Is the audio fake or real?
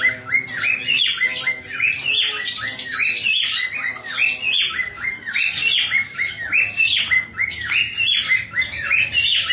real